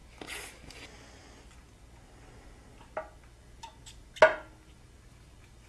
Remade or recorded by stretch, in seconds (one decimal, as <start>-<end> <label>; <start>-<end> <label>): 0.0-5.7 recorded